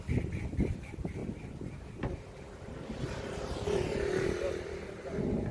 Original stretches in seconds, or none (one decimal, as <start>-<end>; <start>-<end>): 0.0-5.5